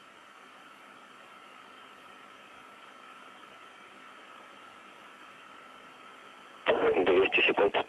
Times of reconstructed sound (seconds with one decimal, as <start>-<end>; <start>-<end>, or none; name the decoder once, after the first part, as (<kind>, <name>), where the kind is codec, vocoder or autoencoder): 0.0-6.2 (codec, DAC)